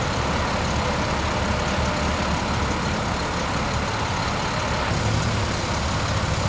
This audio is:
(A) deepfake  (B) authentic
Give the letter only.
B